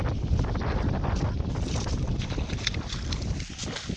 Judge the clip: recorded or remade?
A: recorded